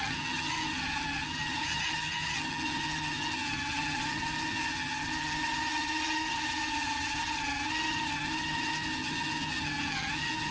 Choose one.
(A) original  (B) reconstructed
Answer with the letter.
B